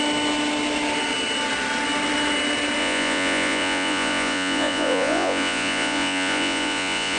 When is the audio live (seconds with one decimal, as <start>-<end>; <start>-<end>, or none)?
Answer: 0.0-2.8